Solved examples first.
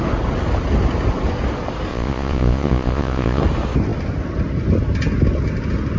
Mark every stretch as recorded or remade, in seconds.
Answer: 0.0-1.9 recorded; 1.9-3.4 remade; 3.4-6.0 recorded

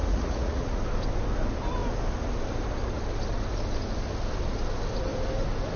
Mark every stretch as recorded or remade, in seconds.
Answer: 0.0-0.8 remade; 0.8-5.8 recorded

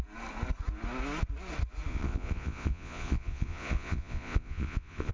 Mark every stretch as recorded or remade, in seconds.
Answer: 0.0-1.9 recorded; 1.9-5.1 remade

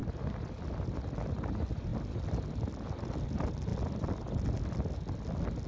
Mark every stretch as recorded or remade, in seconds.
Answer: 0.0-5.7 recorded